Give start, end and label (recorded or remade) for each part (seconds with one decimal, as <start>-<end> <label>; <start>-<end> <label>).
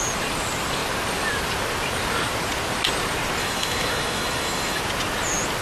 0.0-3.4 recorded; 3.4-4.8 remade; 4.8-5.6 recorded